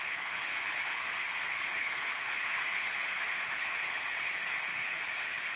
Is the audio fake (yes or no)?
yes